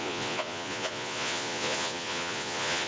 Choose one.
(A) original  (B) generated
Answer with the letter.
B